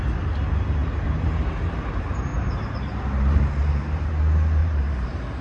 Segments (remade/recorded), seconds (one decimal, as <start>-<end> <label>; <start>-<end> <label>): 0.0-0.8 recorded; 0.8-1.9 remade; 1.9-2.3 recorded; 2.3-4.1 remade; 4.1-4.6 recorded; 4.6-5.4 remade